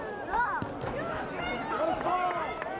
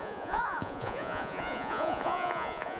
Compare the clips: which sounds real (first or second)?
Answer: first